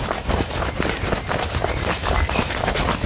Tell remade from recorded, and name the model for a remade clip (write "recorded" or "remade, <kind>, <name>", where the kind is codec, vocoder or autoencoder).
recorded